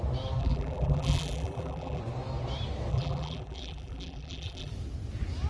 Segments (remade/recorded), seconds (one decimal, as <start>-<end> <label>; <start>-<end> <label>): 0.0-0.4 recorded; 0.4-2.0 remade; 2.0-2.9 recorded; 2.9-4.7 remade; 4.7-5.5 recorded